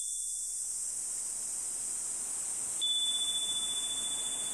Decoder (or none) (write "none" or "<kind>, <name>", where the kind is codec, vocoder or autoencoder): none